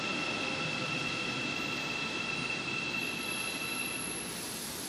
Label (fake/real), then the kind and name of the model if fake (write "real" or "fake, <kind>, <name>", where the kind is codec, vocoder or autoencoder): real